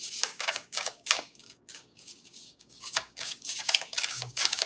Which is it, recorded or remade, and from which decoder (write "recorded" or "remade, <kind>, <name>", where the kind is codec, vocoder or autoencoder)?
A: remade, codec, DAC